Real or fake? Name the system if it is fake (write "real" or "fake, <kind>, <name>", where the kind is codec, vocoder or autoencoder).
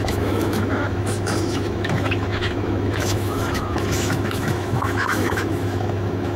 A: fake, autoencoder, DAC-VAE